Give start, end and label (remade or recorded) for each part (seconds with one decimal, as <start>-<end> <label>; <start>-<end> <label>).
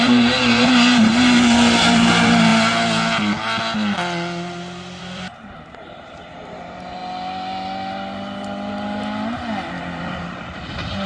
0.0-2.5 remade; 2.5-5.0 recorded; 5.0-7.0 remade; 7.0-9.8 recorded; 9.8-11.1 remade